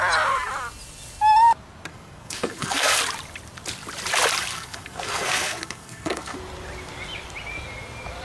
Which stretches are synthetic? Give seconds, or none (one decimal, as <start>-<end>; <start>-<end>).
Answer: 1.9-3.0; 4.5-6.4